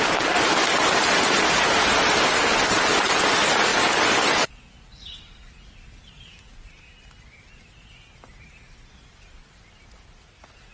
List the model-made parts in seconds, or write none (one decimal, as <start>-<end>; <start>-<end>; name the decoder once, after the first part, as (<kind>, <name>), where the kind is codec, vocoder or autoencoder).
0.0-3.7 (vocoder, BigVGAN v2); 8.1-10.7